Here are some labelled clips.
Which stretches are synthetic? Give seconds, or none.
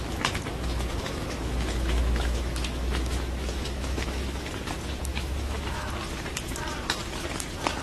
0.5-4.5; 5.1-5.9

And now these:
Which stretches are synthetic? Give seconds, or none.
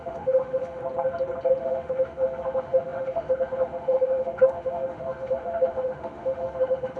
0.0-0.8; 1.6-7.0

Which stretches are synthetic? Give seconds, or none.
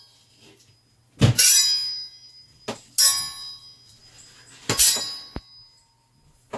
none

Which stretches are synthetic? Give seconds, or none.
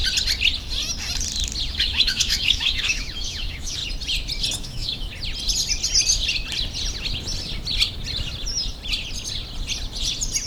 1.7-3.8; 4.6-5.1